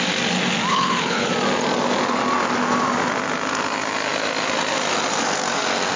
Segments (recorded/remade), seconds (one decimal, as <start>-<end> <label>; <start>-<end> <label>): 0.0-0.7 recorded; 0.7-1.3 remade; 1.3-6.0 recorded